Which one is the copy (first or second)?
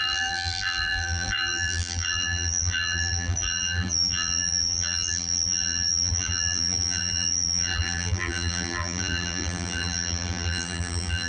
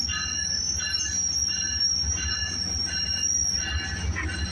first